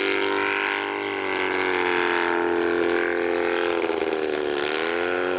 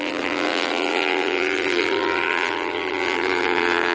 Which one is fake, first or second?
second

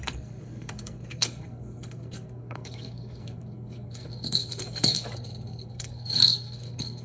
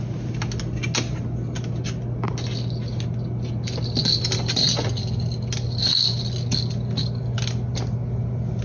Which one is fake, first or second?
first